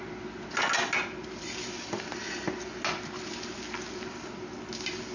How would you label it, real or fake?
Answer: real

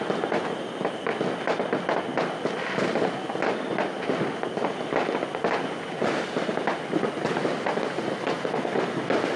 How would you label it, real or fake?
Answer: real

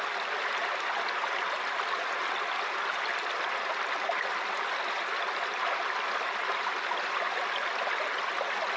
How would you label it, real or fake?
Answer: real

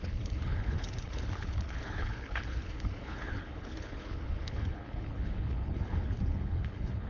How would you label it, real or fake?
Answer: fake